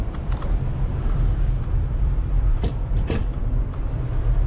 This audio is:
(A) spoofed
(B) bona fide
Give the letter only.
A